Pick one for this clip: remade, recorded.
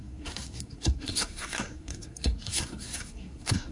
remade